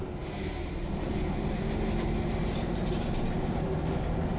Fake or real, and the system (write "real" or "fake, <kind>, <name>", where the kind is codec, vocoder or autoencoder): real